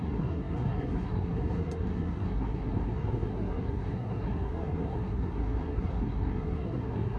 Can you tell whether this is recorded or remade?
remade